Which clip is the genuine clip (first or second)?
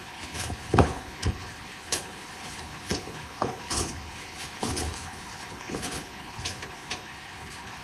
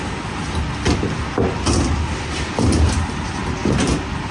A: second